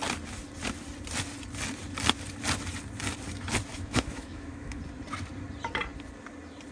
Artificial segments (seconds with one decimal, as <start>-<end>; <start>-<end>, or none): 3.7-4.8